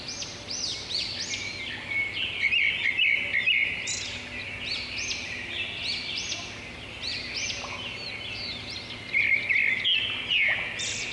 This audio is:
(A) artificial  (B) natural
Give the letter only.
B